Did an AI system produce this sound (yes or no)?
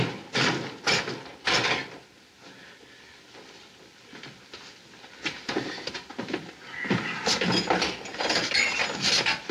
no